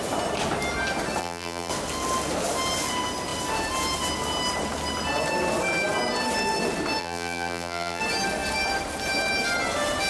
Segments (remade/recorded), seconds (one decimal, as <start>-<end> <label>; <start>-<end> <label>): 0.0-1.2 recorded; 1.2-1.7 remade; 1.7-7.0 recorded; 7.0-8.0 remade; 8.0-10.1 recorded